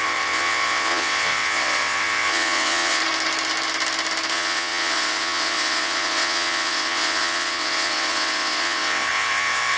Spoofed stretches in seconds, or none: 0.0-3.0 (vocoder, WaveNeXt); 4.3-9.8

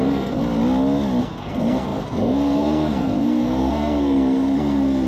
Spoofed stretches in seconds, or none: 0.0-0.4 (codec, SNAC); 1.2-5.1

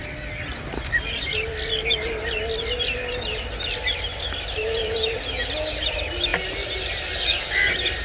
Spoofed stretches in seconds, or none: none

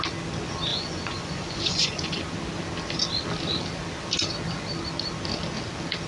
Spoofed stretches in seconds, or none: 0.7-2.2 (vocoder, Vocos)

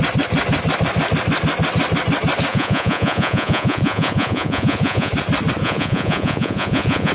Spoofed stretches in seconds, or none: 2.5-5.1 (vocoder, Vocos); 5.6-7.1

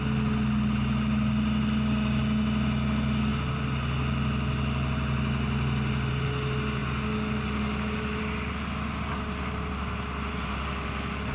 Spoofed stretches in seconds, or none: none

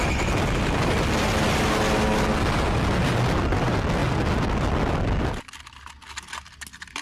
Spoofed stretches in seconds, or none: none

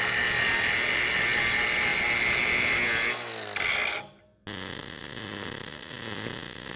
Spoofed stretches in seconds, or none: none